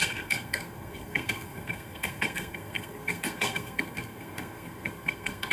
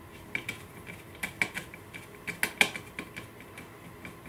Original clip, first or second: second